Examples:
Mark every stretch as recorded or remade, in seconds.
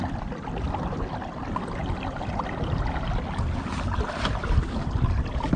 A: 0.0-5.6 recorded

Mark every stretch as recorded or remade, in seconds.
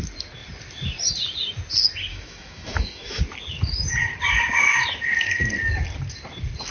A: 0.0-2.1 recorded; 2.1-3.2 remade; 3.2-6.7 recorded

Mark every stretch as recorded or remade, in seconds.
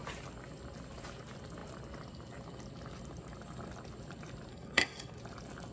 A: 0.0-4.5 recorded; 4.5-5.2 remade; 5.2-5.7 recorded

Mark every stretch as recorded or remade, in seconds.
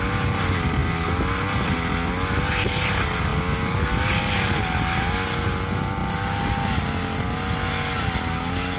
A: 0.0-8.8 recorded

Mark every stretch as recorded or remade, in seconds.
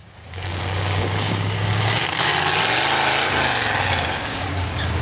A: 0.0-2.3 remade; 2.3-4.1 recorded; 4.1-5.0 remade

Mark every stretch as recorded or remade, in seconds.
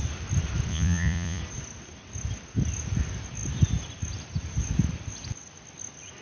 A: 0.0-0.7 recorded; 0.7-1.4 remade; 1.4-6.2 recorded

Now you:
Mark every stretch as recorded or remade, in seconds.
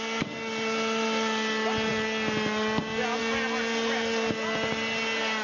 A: 0.0-5.4 recorded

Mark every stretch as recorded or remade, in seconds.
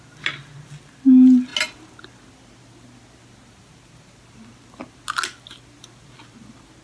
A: 0.0-6.8 recorded